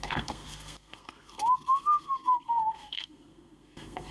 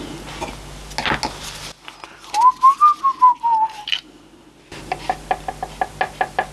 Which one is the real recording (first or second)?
second